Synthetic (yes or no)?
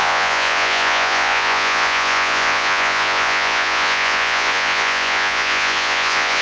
yes